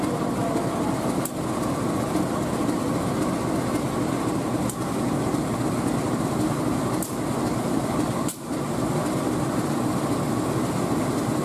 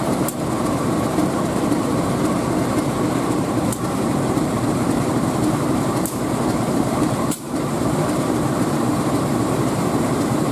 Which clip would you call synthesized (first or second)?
second